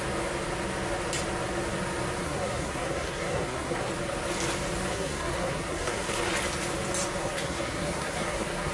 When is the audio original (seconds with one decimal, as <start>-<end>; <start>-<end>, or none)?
0.0-2.2; 3.9-4.9; 6.3-7.2

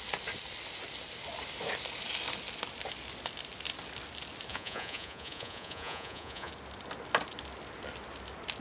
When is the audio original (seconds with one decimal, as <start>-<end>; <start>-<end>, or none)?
0.0-4.5; 6.5-8.6

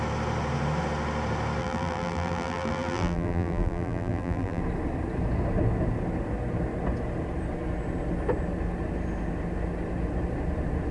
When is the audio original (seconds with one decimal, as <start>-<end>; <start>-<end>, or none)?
0.0-1.6; 4.6-10.9

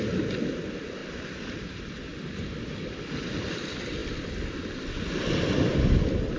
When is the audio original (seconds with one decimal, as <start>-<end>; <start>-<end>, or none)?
0.0-6.4

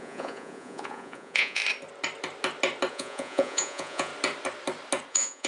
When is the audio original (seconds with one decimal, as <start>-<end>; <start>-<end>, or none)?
1.6-2.9; 4.1-5.1

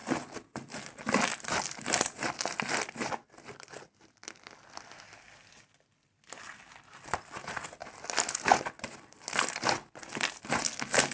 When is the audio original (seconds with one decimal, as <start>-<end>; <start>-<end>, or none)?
0.0-11.1

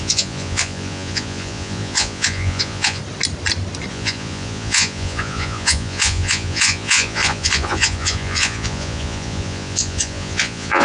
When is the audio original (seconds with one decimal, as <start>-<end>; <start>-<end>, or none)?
3.0-3.9